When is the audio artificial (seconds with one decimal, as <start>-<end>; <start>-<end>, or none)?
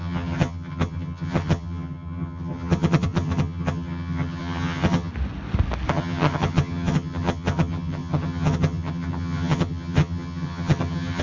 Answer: 0.0-5.1; 5.9-11.2